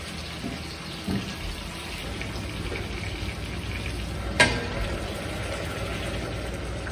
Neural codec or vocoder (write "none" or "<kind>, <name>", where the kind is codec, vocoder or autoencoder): none